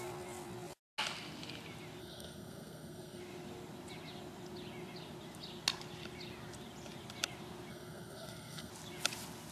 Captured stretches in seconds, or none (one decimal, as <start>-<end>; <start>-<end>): 0.0-2.0; 3.2-7.7; 8.7-9.5